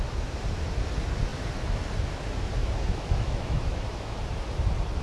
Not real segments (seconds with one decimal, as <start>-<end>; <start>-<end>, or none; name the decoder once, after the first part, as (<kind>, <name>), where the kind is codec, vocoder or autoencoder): 2.6-4.2 (autoencoder, DAC-VAE)